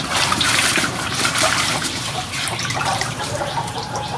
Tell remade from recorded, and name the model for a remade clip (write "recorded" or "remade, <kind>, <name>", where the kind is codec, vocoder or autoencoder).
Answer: remade, vocoder, BigVGAN v2